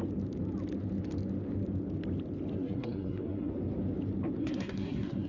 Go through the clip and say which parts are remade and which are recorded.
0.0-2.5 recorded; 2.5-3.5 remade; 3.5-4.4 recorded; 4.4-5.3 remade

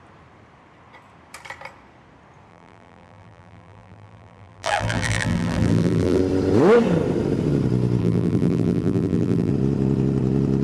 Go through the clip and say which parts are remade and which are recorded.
0.0-2.5 recorded; 2.5-6.2 remade; 6.2-8.0 recorded; 8.0-9.5 remade; 9.5-10.6 recorded

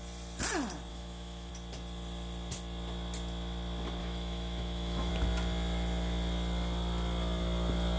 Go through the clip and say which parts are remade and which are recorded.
0.0-0.9 recorded; 0.9-1.5 remade; 1.5-4.0 recorded; 4.0-5.1 remade; 5.1-8.0 recorded